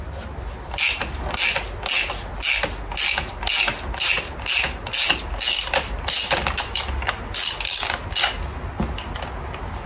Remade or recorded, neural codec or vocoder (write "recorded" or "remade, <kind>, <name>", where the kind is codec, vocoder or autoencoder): recorded